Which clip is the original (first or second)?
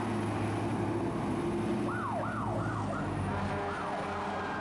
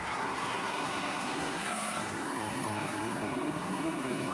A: first